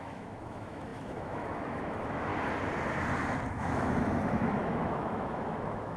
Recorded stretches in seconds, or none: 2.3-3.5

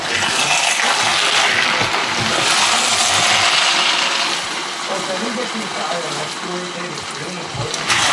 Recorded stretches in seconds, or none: 0.0-1.1; 1.6-8.1

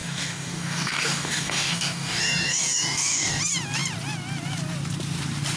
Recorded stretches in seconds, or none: 3.4-5.6